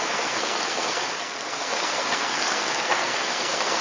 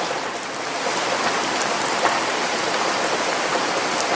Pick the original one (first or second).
second